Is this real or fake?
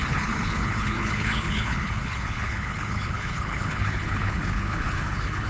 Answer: fake